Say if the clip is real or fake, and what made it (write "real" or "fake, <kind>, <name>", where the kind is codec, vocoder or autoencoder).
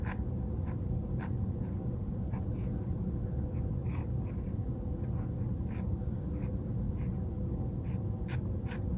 real